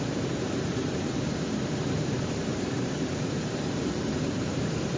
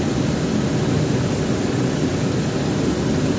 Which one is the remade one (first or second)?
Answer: first